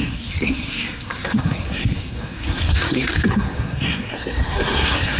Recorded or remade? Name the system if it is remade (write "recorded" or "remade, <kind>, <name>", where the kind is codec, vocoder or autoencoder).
remade, codec, SNAC